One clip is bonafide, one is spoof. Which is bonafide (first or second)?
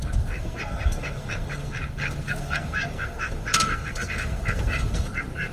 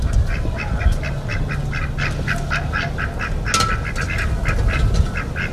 second